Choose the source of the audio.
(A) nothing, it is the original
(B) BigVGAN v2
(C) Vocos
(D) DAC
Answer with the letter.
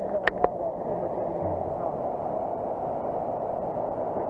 A